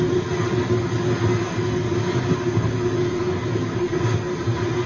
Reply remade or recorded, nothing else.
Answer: recorded